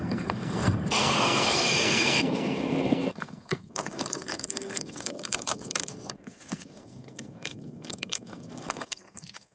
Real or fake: fake